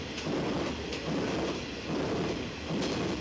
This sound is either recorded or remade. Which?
recorded